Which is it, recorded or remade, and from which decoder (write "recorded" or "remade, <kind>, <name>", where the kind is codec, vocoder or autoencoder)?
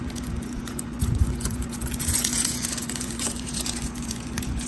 remade, vocoder, Vocos